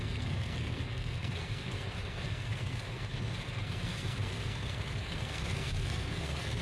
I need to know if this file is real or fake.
fake